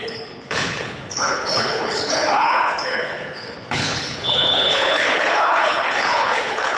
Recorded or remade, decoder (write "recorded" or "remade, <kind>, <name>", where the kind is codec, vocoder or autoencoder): remade, codec, HILCodec